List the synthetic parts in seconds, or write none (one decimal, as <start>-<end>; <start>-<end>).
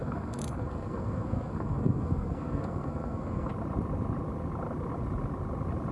0.0-3.5